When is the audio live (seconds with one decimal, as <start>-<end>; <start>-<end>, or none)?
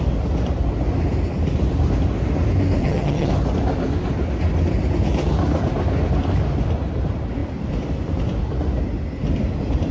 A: 0.0-2.8; 3.3-9.9